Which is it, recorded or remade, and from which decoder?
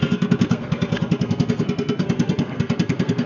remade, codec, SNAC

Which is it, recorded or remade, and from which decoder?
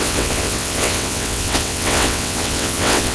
remade, vocoder, WaveNeXt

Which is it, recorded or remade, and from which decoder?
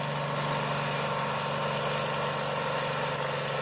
recorded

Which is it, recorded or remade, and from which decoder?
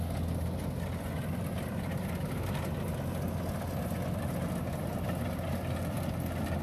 recorded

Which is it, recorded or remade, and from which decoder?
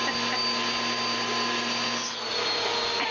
recorded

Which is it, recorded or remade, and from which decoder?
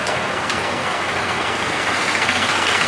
remade, codec, SNAC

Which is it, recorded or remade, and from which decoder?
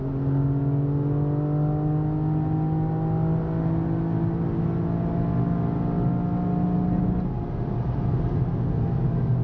recorded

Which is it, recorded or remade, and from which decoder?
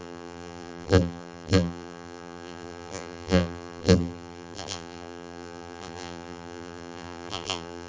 remade, vocoder, BigVGAN v2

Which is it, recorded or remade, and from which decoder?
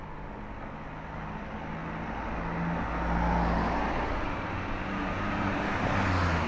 recorded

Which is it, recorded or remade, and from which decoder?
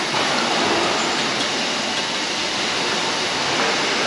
recorded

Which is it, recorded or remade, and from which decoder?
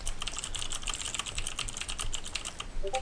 recorded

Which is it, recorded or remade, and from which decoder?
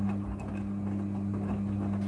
recorded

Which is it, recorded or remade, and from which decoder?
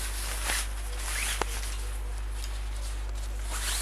recorded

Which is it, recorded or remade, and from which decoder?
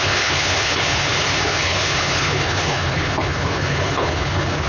remade, codec, HILCodec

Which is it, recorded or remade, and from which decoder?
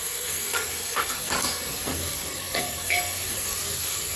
remade, codec, SNAC